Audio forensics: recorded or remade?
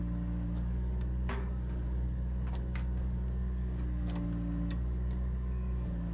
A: remade